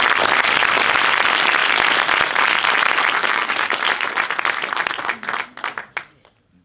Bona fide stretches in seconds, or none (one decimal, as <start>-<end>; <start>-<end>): 0.0-3.2; 3.8-6.6